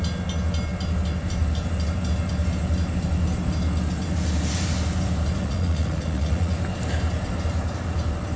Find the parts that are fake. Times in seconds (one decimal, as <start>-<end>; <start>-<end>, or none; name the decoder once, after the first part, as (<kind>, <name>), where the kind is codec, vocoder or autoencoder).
5.4-6.5 (vocoder, Vocos)